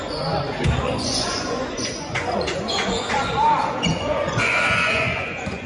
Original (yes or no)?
no